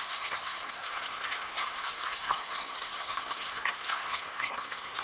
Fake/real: fake